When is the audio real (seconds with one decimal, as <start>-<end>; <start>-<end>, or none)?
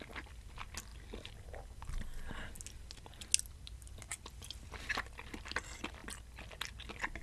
0.0-7.2